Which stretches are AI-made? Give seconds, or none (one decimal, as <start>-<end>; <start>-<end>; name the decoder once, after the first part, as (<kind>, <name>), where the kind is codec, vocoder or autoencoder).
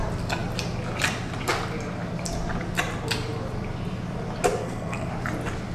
4.6-5.1 (codec, SNAC)